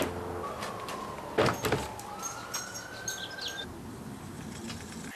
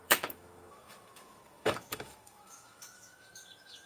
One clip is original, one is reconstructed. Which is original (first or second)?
first